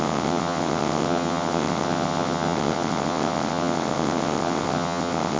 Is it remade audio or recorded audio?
remade